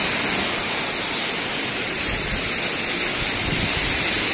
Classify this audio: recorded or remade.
recorded